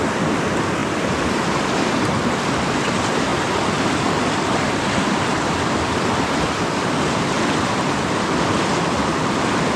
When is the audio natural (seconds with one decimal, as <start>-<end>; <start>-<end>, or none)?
0.0-9.8